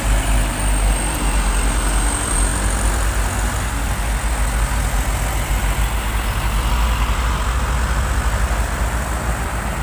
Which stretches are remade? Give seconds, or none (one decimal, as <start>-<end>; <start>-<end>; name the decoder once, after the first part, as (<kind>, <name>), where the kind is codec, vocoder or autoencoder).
none